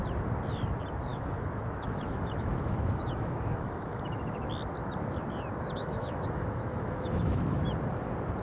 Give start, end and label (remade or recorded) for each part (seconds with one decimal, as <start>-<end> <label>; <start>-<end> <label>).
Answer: 0.0-1.1 recorded; 1.1-4.5 remade; 4.5-5.8 recorded; 5.8-7.6 remade; 7.6-8.4 recorded